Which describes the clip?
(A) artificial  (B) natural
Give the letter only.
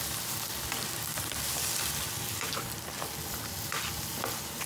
B